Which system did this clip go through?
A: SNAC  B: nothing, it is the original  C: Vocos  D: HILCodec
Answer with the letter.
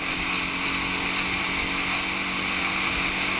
B